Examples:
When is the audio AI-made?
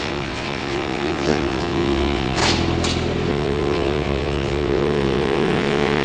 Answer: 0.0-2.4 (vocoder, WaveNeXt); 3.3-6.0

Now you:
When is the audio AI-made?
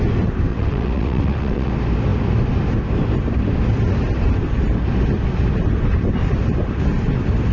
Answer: 0.5-1.7 (vocoder, WaveNeXt)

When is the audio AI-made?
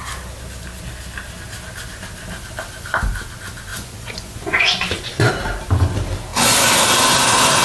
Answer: 3.7-5.3 (vocoder, Vocos)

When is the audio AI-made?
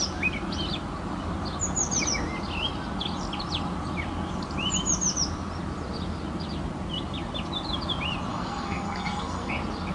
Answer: 8.3-9.5 (codec, SNAC)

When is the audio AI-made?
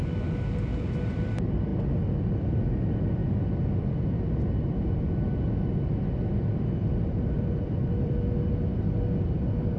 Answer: 0.0-1.7 (vocoder, BigVGAN v2); 2.4-3.2; 6.8-9.8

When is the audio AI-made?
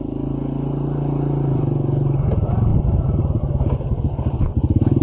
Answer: 2.7-3.4 (vocoder, BigVGAN v2)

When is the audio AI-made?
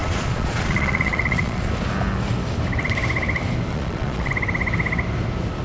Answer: 0.0-1.7 (vocoder, Vocos); 3.7-4.3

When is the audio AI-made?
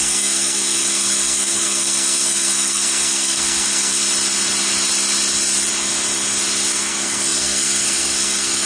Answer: 0.0-4.0 (codec, SNAC); 6.7-8.7